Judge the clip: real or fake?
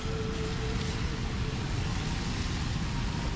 real